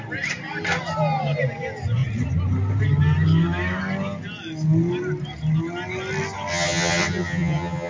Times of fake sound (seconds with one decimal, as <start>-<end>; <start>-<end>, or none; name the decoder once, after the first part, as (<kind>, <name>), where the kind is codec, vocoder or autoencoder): 6.5-7.9 (vocoder, HiFi-GAN)